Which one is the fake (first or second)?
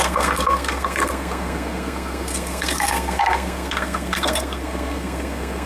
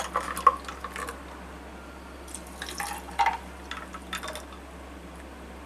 first